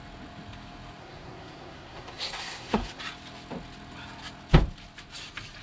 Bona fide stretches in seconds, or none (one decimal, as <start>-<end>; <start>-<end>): 0.0-1.0; 3.0-5.6